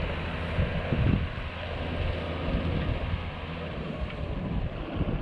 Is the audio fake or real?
real